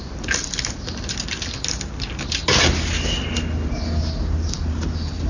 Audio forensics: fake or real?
real